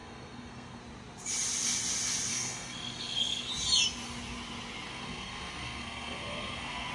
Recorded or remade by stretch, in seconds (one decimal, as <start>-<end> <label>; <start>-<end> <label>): 0.0-0.8 remade; 0.8-2.3 recorded; 2.3-3.5 remade; 3.5-4.9 recorded; 4.9-6.9 remade